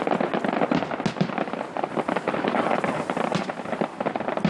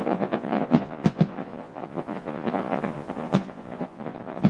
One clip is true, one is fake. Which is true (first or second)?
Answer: first